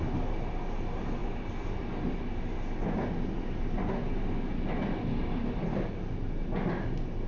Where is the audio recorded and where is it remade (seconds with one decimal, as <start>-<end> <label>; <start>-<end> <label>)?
0.0-7.3 recorded

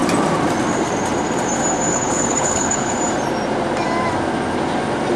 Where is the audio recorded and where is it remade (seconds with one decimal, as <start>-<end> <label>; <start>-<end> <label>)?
0.0-1.9 recorded; 1.9-3.0 remade; 3.0-5.2 recorded

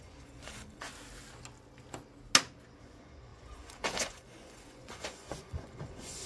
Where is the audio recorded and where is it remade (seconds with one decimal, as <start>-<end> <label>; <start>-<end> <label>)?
0.0-0.9 remade; 0.9-2.8 recorded; 2.8-6.3 remade

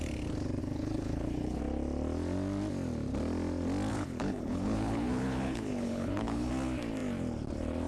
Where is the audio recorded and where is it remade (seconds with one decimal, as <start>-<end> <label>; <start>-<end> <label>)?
0.0-0.6 recorded; 0.6-1.6 remade; 1.6-3.9 recorded; 3.9-6.5 remade; 6.5-7.9 recorded

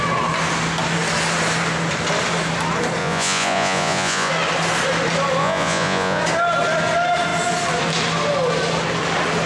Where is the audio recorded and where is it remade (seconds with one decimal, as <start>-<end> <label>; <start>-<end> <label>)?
0.0-3.0 recorded; 3.0-4.3 remade; 4.3-5.4 recorded; 5.4-6.2 remade; 6.2-9.5 recorded

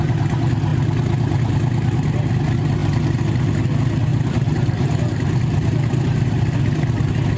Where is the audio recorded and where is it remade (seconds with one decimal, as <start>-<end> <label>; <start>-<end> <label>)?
0.0-4.1 recorded; 4.1-6.6 remade; 6.6-7.4 recorded

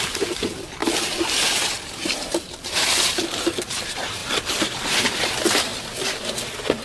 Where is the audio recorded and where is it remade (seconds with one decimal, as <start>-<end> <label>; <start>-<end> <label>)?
0.0-0.8 remade; 0.8-2.0 recorded; 2.0-5.7 remade; 5.7-6.8 recorded